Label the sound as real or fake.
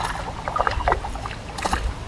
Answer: real